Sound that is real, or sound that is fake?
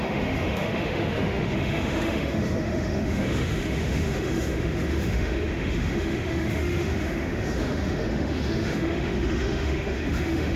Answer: fake